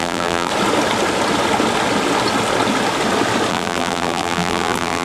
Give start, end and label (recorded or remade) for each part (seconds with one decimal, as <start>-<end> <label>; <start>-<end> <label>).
0.0-0.5 remade; 0.5-3.5 recorded; 3.5-5.0 remade